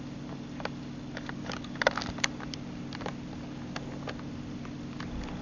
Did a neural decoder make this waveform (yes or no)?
no